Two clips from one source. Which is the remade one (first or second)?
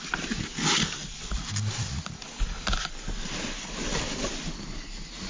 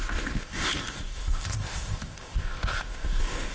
second